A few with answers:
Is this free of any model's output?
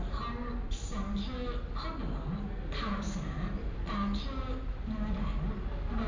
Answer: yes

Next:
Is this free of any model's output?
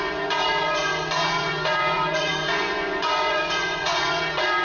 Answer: no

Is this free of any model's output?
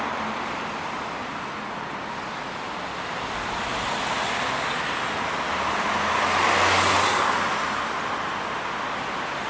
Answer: yes